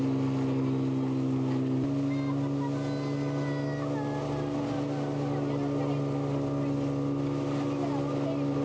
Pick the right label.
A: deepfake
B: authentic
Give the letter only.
B